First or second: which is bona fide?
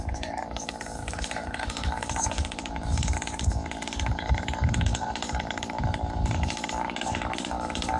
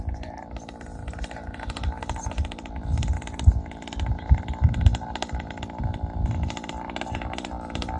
second